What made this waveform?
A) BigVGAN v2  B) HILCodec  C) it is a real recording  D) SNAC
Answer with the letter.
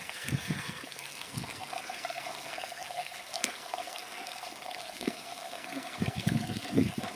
D